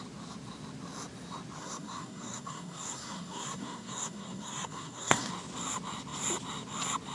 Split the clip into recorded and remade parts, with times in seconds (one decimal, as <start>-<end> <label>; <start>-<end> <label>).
0.0-1.6 recorded; 1.6-5.3 remade; 5.3-7.1 recorded

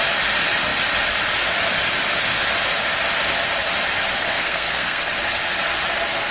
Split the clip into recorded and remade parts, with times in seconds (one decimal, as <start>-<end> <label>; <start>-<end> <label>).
0.0-4.3 recorded; 4.3-5.0 remade; 5.0-6.3 recorded

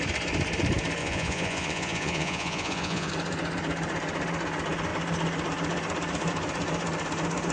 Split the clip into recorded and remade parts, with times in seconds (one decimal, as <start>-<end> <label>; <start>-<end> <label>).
0.0-1.0 recorded; 1.0-3.1 remade; 3.1-7.5 recorded

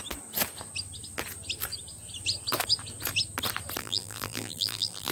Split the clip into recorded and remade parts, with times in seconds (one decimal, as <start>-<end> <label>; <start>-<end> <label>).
0.0-3.8 recorded; 3.8-5.1 remade

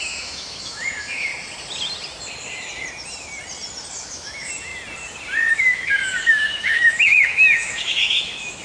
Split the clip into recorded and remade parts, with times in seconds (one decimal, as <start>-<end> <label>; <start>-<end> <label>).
0.0-1.3 remade; 1.3-4.1 recorded; 4.1-4.7 remade; 4.7-5.5 recorded; 5.5-8.6 remade

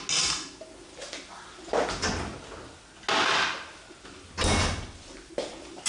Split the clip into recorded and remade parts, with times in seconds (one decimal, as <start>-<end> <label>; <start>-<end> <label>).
0.0-5.9 recorded

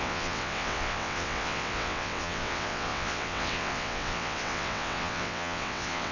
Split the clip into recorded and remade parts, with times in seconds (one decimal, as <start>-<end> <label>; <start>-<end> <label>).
0.0-6.1 remade